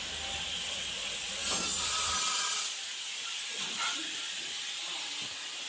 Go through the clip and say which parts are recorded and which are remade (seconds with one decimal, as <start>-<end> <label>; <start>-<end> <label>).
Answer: 0.0-5.7 recorded